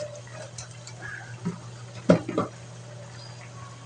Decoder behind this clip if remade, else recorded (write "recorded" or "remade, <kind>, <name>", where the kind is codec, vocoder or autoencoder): recorded